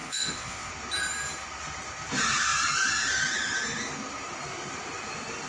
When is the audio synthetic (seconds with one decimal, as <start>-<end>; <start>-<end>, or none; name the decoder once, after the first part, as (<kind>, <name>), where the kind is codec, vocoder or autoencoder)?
0.0-0.7 (vocoder, WaveNeXt)